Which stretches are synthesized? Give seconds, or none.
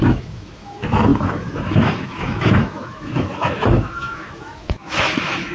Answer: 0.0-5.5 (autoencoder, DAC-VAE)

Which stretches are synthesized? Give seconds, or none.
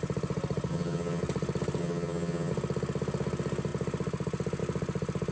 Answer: 0.7-1.2 (vocoder, HiFi-GAN); 1.8-2.5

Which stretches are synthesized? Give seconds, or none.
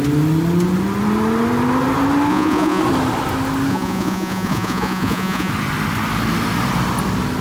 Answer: 2.3-2.8 (vocoder, Vocos); 3.7-5.5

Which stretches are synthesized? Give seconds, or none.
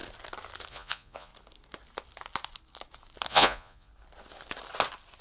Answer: 0.7-1.3 (vocoder, Vocos); 3.3-3.9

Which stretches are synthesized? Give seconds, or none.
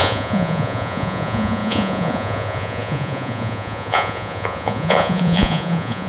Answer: 0.0-6.1 (vocoder, Vocos)